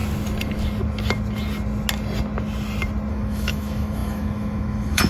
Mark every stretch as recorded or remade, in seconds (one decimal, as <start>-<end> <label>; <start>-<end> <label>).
0.0-3.1 recorded; 3.1-5.1 remade